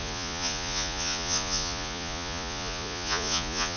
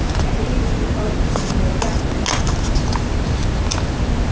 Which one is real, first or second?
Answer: second